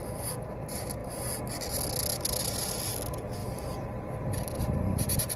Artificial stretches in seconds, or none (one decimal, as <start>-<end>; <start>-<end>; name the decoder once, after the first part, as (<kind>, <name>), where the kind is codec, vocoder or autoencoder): 3.4-4.6 (vocoder, BigVGAN v2)